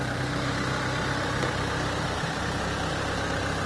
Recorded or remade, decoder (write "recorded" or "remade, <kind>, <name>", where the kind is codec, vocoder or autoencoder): remade, vocoder, BigVGAN v2